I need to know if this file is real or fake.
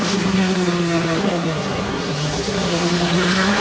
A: fake